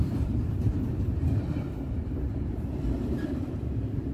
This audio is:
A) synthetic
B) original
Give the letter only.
A